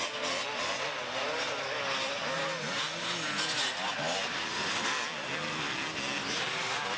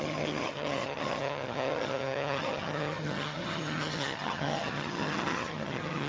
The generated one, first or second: second